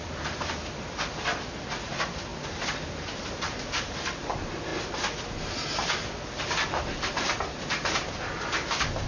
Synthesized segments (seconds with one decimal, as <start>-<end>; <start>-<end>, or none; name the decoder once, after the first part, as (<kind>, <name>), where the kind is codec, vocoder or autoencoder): 0.0-4.7 (vocoder, BigVGAN v2); 6.4-9.1